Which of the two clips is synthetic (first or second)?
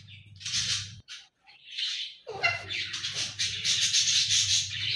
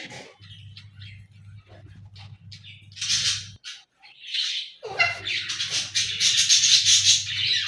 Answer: first